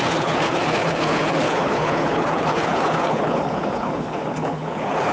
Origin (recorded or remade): remade